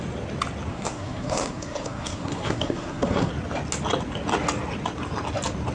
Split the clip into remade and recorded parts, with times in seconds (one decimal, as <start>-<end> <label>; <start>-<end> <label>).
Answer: 0.0-0.7 recorded; 0.7-3.3 remade; 3.3-5.7 recorded